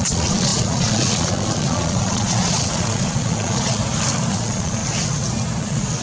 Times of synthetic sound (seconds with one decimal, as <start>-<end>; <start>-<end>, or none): 0.0-3.8; 4.3-4.8; 5.6-6.0

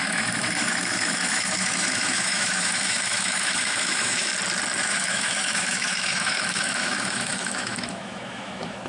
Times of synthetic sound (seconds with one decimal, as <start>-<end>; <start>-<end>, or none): 0.0-4.3; 4.8-8.9

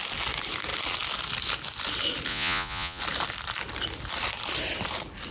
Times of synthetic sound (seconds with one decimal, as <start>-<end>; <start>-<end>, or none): 2.3-3.0

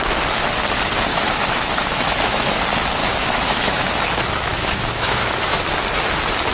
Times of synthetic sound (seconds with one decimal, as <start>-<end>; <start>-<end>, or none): 1.1-2.6; 3.0-3.9; 4.5-5.7

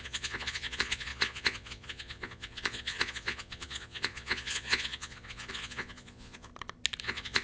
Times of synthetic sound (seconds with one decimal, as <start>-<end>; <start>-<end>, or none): 0.0-6.5; 7.0-7.4